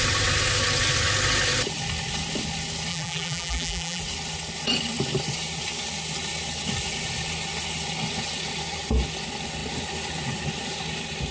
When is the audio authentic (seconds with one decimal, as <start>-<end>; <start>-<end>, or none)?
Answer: 0.0-2.9; 4.0-11.3